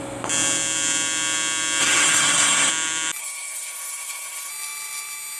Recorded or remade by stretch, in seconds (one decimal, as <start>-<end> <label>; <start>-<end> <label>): 0.0-1.8 recorded; 1.8-2.7 remade; 2.7-3.2 recorded; 3.2-4.5 remade; 4.5-5.4 recorded